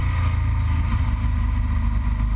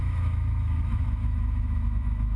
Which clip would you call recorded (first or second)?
first